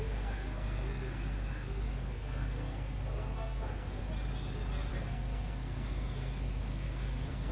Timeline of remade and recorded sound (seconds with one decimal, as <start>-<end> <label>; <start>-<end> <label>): 0.0-4.0 remade; 4.0-4.9 recorded; 4.9-7.5 remade